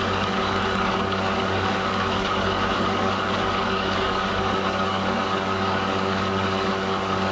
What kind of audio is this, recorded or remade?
remade